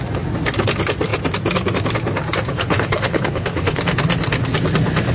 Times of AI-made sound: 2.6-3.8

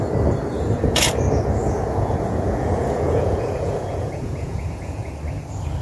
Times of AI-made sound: 0.5-1.1; 1.6-5.1

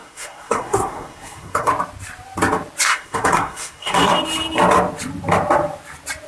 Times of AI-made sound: 0.0-1.7; 2.9-4.1

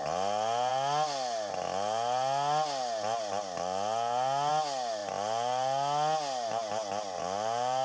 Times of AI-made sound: none